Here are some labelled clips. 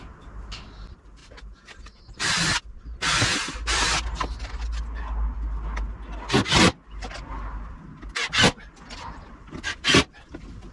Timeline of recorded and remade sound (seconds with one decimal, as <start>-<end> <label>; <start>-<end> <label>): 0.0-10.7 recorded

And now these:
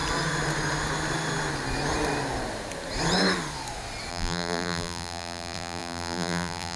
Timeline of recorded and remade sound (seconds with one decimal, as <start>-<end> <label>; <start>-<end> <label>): 0.0-4.1 recorded; 4.1-6.8 remade

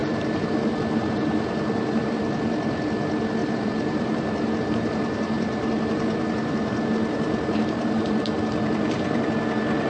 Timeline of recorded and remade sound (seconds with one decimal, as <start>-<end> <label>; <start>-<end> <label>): 0.0-2.2 remade; 2.2-3.4 recorded; 3.4-8.4 remade; 8.4-9.9 recorded

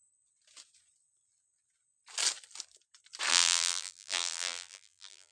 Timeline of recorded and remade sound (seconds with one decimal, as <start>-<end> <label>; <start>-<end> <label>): 0.0-3.3 recorded; 3.3-5.3 remade

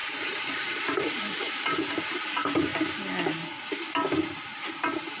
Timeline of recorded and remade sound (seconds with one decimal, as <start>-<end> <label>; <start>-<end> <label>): 0.0-2.7 remade; 2.7-4.7 recorded; 4.7-5.2 remade

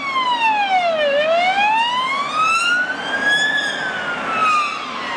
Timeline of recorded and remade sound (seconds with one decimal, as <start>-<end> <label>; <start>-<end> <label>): 0.0-5.2 recorded

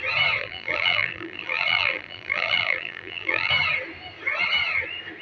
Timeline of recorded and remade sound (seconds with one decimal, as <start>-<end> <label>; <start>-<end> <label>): 0.0-0.4 recorded; 0.4-3.5 remade; 3.5-5.2 recorded